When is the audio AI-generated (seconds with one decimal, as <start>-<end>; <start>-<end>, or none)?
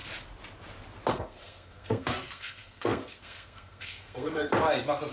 1.1-4.5